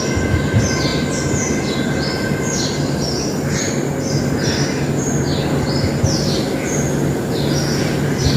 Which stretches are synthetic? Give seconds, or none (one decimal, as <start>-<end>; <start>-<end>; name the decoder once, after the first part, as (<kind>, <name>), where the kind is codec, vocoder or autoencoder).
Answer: none